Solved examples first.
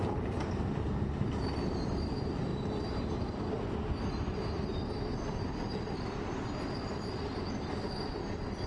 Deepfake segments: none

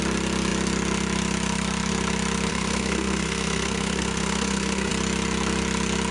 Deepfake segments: 2.5-4.9 (codec, SNAC)

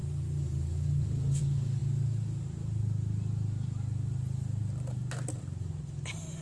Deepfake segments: none

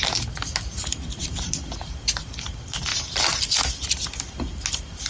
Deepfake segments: 2.9-3.4 (vocoder, BigVGAN v2)